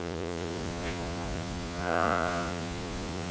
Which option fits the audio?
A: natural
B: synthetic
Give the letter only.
B